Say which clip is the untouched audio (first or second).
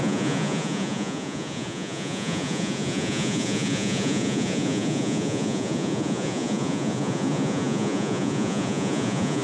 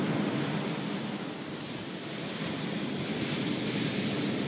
second